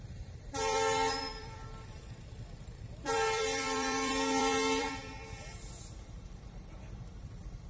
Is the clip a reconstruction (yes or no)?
yes